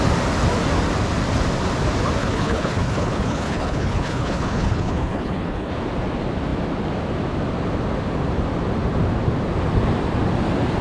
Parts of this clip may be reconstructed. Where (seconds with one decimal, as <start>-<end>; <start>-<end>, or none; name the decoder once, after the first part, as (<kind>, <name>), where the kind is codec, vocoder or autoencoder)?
2.2-5.7 (codec, HILCodec)